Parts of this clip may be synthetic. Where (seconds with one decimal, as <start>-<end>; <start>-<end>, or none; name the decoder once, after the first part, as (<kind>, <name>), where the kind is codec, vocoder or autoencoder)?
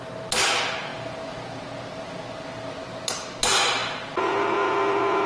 none